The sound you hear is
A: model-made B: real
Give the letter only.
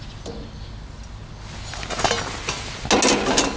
B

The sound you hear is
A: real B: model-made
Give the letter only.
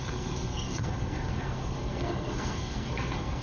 B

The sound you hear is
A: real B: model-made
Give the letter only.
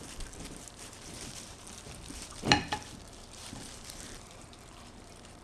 B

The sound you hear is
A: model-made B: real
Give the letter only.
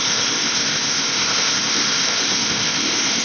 A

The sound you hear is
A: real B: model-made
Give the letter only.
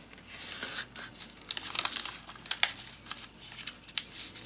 A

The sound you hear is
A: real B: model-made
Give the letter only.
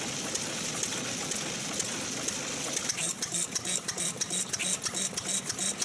A